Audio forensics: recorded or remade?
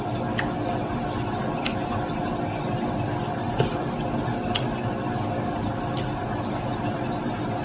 recorded